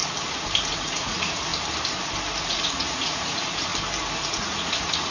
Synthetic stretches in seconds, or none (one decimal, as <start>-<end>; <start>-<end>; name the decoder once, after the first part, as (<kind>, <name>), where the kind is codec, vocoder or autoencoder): 0.7-1.5 (vocoder, Vocos); 2.4-3.7; 4.3-5.1

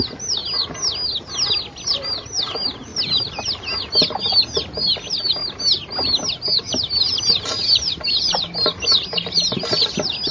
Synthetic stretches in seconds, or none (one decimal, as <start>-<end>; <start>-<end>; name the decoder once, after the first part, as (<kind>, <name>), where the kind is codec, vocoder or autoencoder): 0.0-0.4 (vocoder, BigVGAN v2); 1.5-2.9; 4.2-5.4; 6.6-10.3

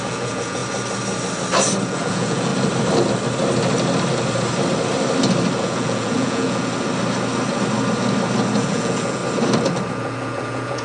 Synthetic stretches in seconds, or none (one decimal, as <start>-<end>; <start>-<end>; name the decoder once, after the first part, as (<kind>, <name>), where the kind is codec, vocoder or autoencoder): 0.0-0.6 (vocoder, Vocos); 1.9-2.5; 5.6-6.7; 8.6-9.2; 9.9-10.8

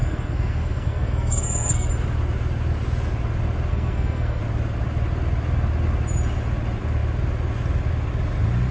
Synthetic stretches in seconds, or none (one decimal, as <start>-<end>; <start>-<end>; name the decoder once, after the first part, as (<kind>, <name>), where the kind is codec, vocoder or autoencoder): 0.0-1.9 (codec, SNAC); 3.7-4.4